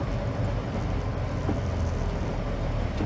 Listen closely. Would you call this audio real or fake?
real